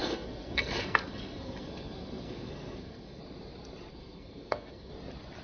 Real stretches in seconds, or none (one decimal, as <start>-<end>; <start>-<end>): 3.2-3.9; 4.9-5.4